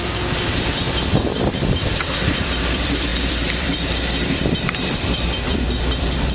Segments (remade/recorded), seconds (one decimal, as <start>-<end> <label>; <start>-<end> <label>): 0.0-6.3 remade